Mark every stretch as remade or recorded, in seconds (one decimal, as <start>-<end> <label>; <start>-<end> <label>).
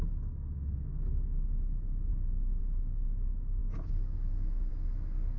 0.0-5.4 recorded